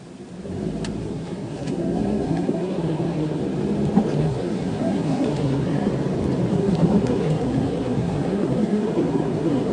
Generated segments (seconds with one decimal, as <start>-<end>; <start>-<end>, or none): 1.0-3.4; 4.2-5.9; 6.5-9.7